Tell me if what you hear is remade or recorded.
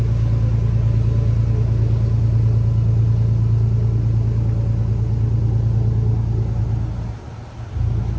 recorded